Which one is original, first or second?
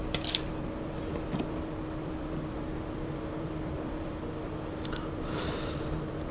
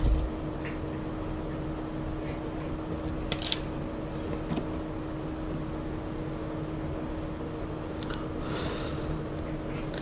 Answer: second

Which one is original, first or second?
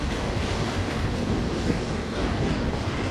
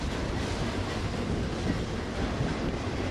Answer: second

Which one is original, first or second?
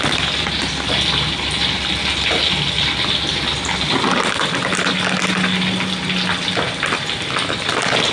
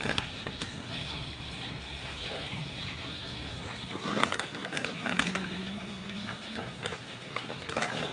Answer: first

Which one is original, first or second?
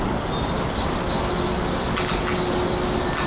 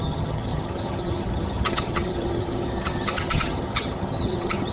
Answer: first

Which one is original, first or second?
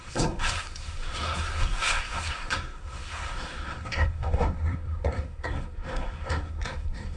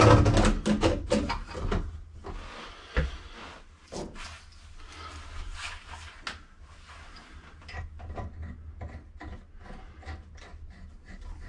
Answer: second